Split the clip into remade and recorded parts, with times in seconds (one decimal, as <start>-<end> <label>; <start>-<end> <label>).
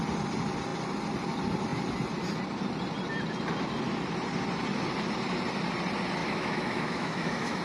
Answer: 0.0-6.2 recorded; 6.2-7.6 remade